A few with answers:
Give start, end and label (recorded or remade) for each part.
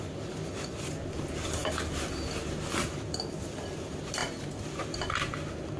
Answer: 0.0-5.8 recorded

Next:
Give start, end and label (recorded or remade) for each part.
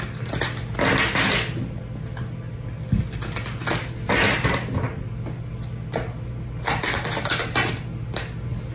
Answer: 0.0-8.7 recorded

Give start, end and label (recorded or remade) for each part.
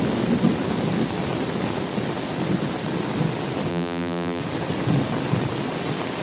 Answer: 0.0-3.7 recorded; 3.7-4.4 remade; 4.4-6.2 recorded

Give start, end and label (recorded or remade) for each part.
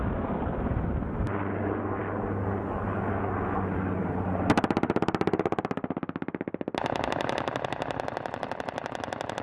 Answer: 0.0-9.4 recorded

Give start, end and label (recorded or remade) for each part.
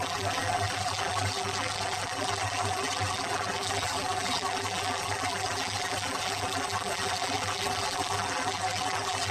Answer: 0.0-9.3 remade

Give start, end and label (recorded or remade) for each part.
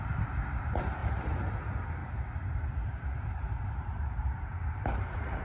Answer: 0.0-1.0 recorded; 1.0-1.5 remade; 1.5-2.0 recorded; 2.0-5.4 remade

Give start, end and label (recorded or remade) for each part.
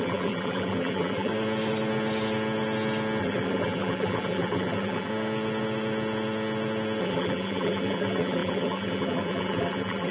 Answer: 0.0-1.3 remade; 1.3-3.2 recorded; 3.2-5.1 remade; 5.1-7.0 recorded; 7.0-10.1 remade